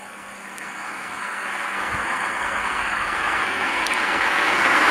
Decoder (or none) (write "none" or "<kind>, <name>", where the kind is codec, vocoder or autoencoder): codec, SNAC